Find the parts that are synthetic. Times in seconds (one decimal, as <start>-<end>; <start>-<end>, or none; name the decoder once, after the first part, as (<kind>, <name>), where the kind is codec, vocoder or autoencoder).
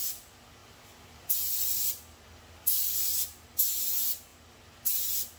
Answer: none